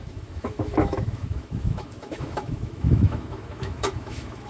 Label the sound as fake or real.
fake